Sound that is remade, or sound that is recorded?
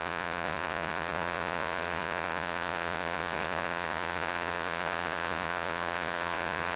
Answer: remade